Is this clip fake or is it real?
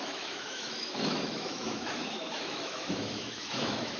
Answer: fake